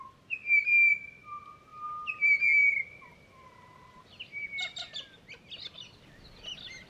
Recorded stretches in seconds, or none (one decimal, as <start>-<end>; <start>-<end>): 0.0-6.9